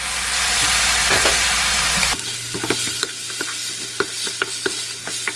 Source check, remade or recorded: recorded